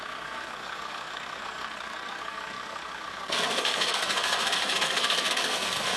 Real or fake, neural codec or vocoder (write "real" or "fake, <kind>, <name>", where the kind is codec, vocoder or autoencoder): fake, codec, SNAC